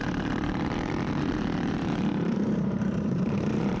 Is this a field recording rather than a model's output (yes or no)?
no